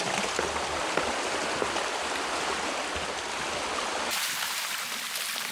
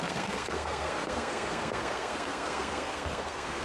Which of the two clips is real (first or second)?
first